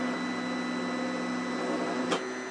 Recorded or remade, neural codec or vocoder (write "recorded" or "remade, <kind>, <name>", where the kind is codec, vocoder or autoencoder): recorded